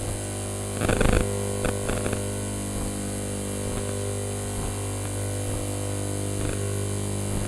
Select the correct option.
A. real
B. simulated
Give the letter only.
A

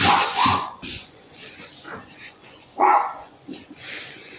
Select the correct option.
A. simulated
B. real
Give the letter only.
A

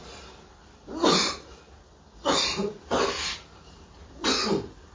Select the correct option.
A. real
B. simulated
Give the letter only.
A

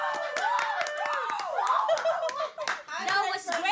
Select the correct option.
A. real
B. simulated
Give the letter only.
A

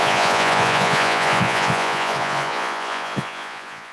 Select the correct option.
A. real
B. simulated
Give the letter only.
B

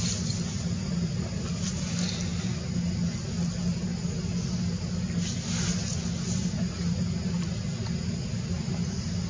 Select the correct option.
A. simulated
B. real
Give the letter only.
B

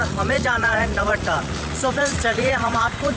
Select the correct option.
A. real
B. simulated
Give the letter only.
B